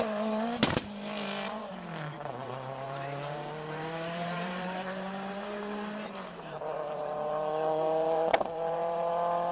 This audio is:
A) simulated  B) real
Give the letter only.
A